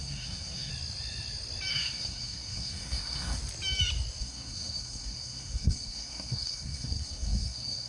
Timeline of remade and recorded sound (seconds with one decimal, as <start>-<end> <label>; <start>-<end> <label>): 0.0-0.7 remade; 0.7-1.7 recorded; 1.7-3.4 remade; 3.4-4.2 recorded; 4.2-7.9 remade